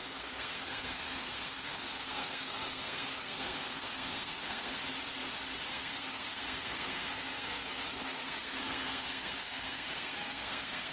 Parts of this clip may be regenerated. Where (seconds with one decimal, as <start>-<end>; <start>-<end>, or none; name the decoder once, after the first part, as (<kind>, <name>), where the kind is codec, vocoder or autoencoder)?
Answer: 0.0-4.8 (codec, SNAC); 5.7-10.9